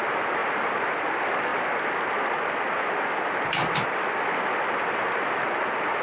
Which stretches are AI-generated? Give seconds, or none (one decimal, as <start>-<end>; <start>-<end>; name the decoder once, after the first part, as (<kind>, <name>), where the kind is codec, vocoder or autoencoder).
none